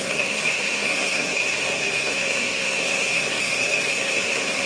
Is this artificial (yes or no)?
yes